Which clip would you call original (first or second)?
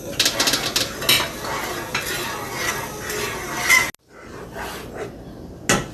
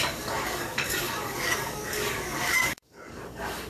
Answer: first